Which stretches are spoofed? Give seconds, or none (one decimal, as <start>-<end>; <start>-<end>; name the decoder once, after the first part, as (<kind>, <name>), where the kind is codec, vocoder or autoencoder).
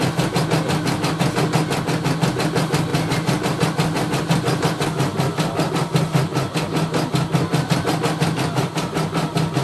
none